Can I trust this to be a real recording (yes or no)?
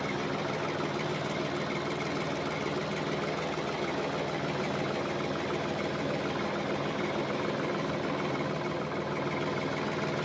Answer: yes